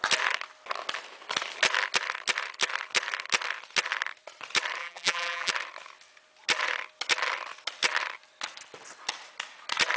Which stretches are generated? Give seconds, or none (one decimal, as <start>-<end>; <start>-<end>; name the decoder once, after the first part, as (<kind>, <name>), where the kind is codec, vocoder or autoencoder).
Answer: 4.8-5.5 (vocoder, BigVGAN v2)